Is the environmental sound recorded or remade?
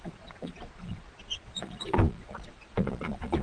remade